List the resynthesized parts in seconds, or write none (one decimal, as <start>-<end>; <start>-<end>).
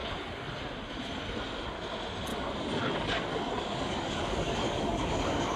2.3-5.6